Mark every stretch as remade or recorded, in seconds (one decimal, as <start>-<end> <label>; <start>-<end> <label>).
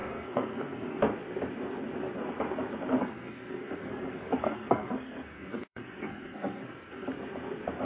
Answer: 0.0-1.0 remade; 1.0-3.0 recorded; 3.0-7.1 remade; 7.1-7.8 recorded